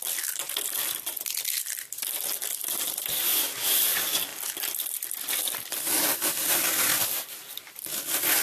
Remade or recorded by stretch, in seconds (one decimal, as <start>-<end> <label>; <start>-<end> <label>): 0.0-8.4 recorded